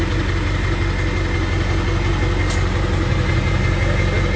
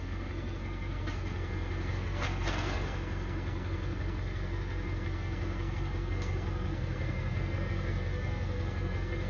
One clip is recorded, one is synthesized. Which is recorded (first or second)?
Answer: first